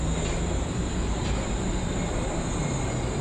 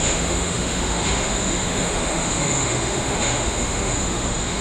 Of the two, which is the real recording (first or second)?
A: first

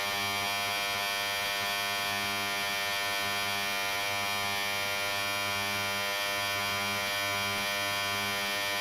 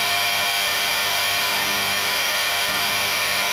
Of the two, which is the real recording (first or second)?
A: first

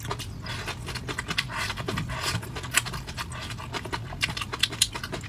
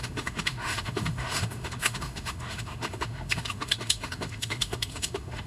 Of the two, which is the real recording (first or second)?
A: first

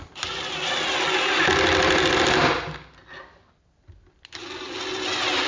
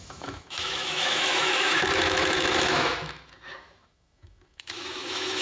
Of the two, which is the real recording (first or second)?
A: first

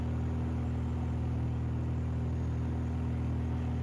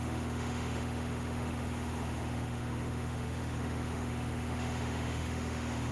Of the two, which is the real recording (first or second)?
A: first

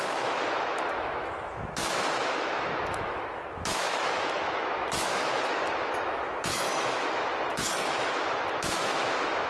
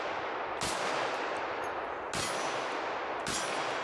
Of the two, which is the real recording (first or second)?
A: second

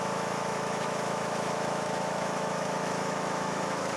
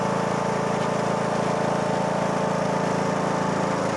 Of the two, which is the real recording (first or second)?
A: second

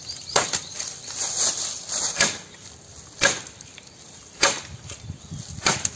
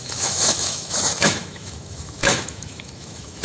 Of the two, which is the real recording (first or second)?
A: first